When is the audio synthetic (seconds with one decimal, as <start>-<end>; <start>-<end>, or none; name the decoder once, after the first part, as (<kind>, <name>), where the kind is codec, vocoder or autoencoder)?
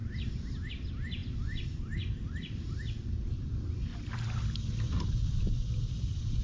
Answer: 1.2-3.1 (vocoder, BigVGAN v2)